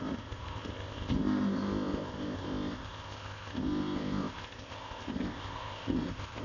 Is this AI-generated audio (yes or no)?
yes